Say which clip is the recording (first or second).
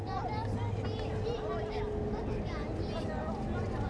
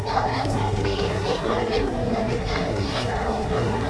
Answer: first